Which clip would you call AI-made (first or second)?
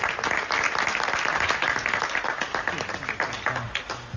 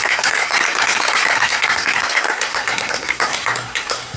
second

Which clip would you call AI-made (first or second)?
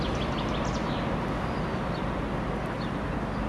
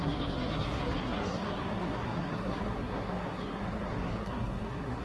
second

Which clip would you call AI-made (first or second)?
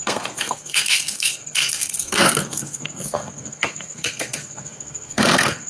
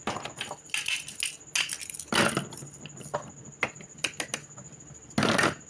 first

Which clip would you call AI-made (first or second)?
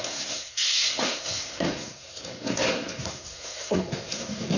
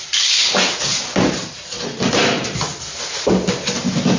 first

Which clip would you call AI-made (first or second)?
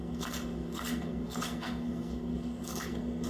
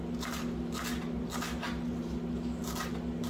first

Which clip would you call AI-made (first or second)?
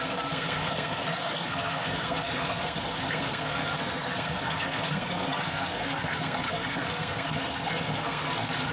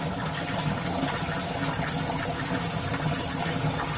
first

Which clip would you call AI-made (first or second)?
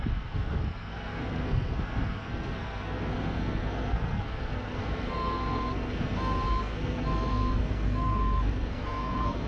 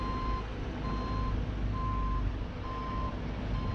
first